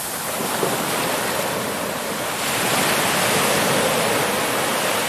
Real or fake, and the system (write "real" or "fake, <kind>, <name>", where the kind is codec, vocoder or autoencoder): real